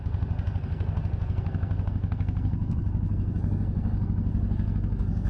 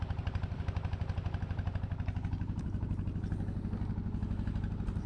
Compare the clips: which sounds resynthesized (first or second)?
first